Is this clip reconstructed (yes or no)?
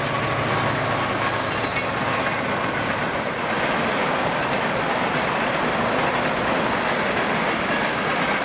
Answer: no